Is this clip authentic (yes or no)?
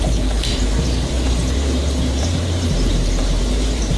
no